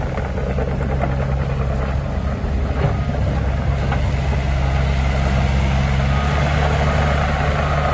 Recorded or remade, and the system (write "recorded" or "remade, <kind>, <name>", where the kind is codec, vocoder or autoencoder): recorded